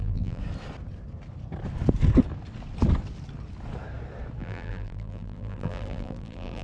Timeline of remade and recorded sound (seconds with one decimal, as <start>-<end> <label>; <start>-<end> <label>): 0.0-0.4 remade; 0.4-4.4 recorded; 4.4-6.6 remade

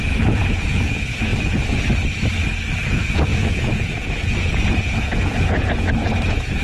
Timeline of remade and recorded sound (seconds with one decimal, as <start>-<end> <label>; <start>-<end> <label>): 0.0-1.3 remade; 1.3-2.8 recorded; 2.8-6.6 remade

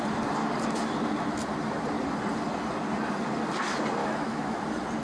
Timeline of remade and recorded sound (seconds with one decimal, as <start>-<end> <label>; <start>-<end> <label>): 0.0-4.0 recorded; 4.0-4.6 remade; 4.6-5.0 recorded

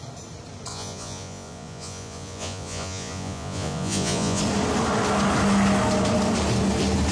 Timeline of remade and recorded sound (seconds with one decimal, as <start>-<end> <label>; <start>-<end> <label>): 0.0-0.7 recorded; 0.7-4.4 remade; 4.4-7.1 recorded